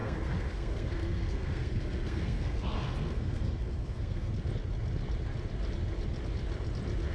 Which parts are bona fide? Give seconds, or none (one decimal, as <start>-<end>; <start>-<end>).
4.3-7.1